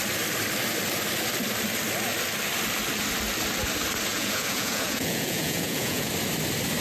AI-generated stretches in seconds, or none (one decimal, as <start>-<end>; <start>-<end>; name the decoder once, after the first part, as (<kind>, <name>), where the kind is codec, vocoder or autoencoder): 4.1-6.1 (vocoder, Vocos)